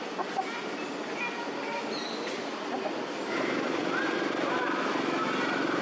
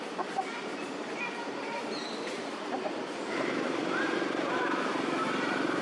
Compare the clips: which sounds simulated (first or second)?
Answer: second